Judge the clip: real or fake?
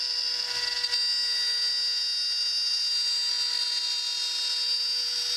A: real